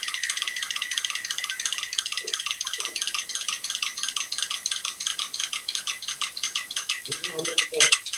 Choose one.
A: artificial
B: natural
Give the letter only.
A